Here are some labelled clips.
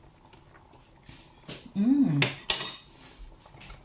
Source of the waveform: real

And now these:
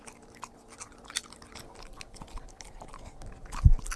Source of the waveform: real